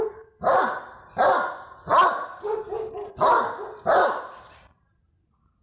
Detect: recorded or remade recorded